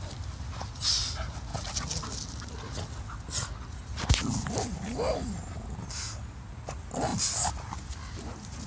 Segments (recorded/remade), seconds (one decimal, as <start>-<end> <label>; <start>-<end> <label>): 0.0-8.7 recorded

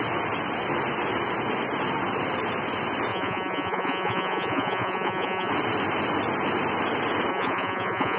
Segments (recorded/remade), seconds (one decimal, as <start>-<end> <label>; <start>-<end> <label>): 0.0-3.1 recorded; 3.1-5.5 remade; 5.5-7.3 recorded; 7.3-8.2 remade